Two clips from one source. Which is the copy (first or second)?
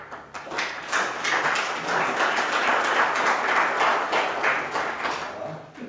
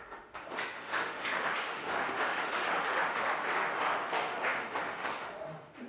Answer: second